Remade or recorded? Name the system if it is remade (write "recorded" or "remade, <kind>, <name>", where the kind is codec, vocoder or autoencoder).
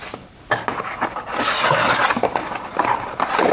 recorded